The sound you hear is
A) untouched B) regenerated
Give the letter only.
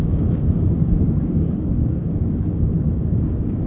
B